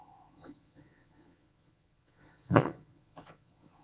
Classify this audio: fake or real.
fake